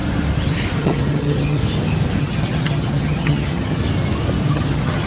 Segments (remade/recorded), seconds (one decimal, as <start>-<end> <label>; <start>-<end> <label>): 0.0-0.8 recorded; 0.8-1.6 remade; 1.6-2.2 recorded; 2.2-3.8 remade; 3.8-4.5 recorded; 4.5-5.1 remade